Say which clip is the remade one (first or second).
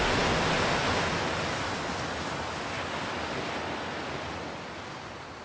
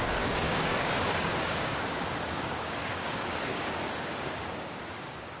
second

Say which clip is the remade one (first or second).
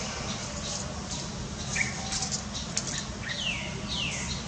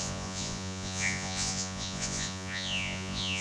second